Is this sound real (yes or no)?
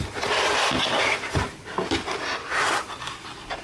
yes